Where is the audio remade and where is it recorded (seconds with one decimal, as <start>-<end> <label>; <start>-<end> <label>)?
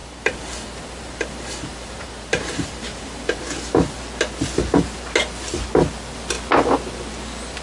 0.0-3.4 remade; 3.4-7.6 recorded